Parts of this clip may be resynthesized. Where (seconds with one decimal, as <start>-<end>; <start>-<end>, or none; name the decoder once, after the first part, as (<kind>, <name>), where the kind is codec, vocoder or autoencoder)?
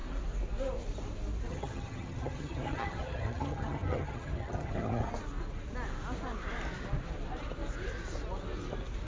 1.5-5.1 (vocoder, HiFi-GAN)